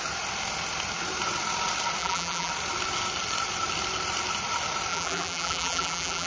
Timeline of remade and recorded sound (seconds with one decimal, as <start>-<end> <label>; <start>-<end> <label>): 0.0-2.0 recorded; 2.0-2.5 remade; 2.5-4.9 recorded; 4.9-6.3 remade